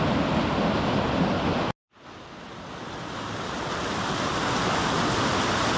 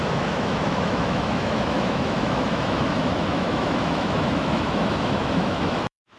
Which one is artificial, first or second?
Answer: second